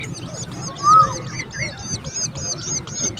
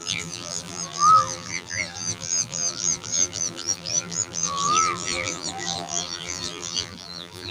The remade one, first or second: second